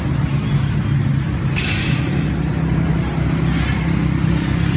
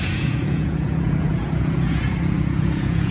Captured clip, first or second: first